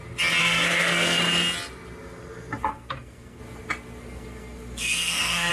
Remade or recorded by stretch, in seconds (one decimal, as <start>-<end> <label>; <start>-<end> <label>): 0.0-0.4 recorded; 0.4-1.2 remade; 1.2-2.7 recorded; 2.7-3.4 remade; 3.4-4.0 recorded; 4.0-5.5 remade